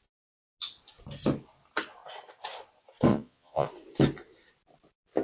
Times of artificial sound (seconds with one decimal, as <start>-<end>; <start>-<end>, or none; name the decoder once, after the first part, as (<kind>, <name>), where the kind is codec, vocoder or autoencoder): 3.1-3.7 (vocoder, Vocos)